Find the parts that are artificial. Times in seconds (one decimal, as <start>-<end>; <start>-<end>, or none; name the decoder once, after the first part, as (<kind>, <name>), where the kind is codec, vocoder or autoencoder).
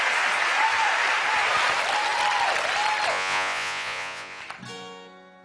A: 3.1-4.4 (vocoder, Vocos)